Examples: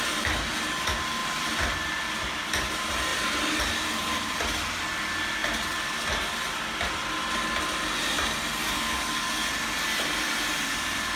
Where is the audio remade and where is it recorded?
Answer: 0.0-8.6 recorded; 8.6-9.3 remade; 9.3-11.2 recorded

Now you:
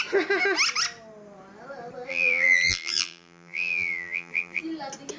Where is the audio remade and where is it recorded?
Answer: 0.0-2.1 recorded; 2.1-4.6 remade; 4.6-5.2 recorded

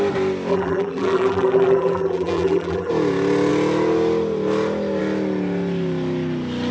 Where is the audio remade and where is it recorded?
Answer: 0.0-0.5 recorded; 0.5-2.9 remade; 2.9-6.7 recorded

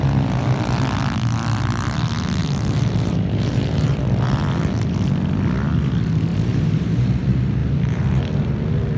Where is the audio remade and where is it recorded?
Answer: 0.0-2.4 recorded; 2.4-4.0 remade; 4.0-6.3 recorded; 6.3-7.1 remade; 7.1-7.6 recorded; 7.6-8.2 remade; 8.2-9.0 recorded

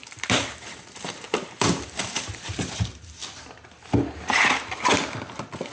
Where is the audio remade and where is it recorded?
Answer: 0.0-3.2 remade; 3.2-5.7 recorded

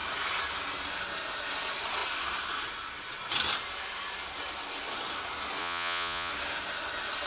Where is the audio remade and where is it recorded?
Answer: 0.0-5.6 recorded; 5.6-6.3 remade; 6.3-7.3 recorded

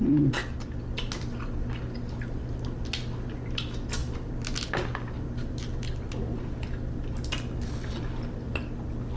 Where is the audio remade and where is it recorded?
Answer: 0.0-9.2 recorded

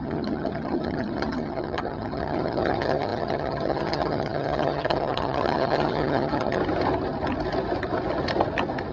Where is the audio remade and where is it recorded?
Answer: 0.0-6.6 remade; 6.6-8.9 recorded